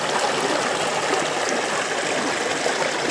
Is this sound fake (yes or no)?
no